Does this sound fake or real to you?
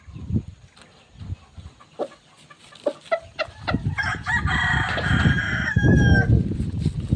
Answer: real